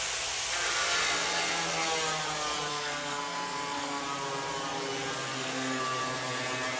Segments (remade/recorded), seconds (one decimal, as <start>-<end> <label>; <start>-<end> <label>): 0.0-2.7 recorded; 2.7-4.0 remade; 4.0-5.3 recorded; 5.3-5.8 remade; 5.8-6.8 recorded